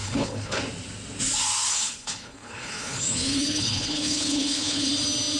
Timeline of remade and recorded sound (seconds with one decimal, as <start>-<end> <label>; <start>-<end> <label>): 0.0-0.6 remade; 0.6-1.7 recorded; 1.7-4.9 remade; 4.9-5.4 recorded